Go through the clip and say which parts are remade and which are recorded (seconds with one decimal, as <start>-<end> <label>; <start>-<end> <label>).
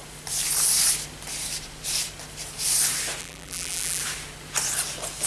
0.0-3.2 recorded; 3.2-4.0 remade; 4.0-5.3 recorded